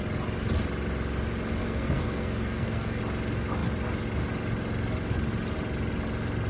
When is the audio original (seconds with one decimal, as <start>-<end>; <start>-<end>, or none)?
0.0-1.6; 3.0-6.5